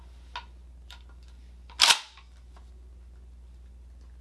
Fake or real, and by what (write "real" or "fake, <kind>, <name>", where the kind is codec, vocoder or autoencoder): real